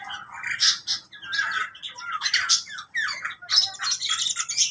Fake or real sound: real